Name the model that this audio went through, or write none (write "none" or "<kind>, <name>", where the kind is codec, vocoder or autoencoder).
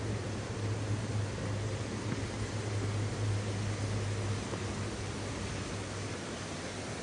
none